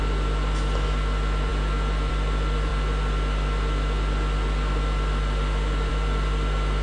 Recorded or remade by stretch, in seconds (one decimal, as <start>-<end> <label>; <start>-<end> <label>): 0.0-6.8 recorded